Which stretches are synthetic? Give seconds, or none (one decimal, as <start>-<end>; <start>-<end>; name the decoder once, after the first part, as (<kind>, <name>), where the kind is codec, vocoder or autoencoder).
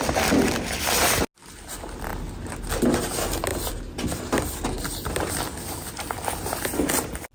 3.5-4.2 (vocoder, BigVGAN v2)